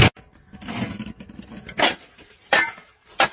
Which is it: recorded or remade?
recorded